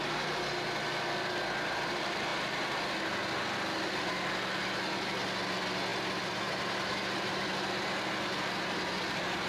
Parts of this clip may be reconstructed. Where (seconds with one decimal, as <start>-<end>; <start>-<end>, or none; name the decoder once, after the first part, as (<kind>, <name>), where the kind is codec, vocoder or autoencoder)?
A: 5.9-7.5 (vocoder, BigVGAN v2)